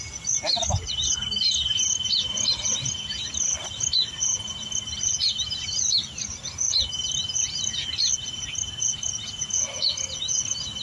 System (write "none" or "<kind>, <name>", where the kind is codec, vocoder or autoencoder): none